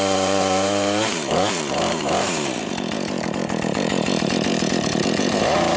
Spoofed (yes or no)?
yes